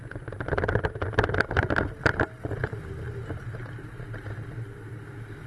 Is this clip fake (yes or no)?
no